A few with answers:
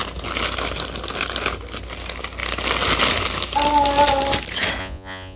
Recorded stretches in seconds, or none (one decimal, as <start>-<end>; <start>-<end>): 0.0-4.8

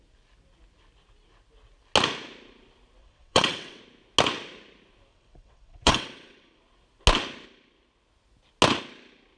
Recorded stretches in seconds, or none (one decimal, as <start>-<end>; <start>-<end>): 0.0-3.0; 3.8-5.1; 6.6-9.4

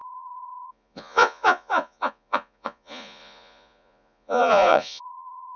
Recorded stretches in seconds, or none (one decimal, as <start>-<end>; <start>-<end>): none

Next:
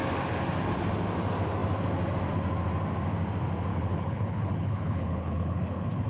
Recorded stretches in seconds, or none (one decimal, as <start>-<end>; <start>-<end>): 0.0-3.7